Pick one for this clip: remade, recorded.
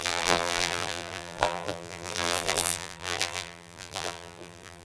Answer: remade